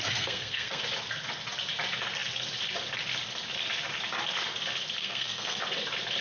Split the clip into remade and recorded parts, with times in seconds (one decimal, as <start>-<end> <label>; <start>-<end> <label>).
0.0-0.8 remade; 0.8-5.0 recorded; 5.0-5.6 remade; 5.6-6.2 recorded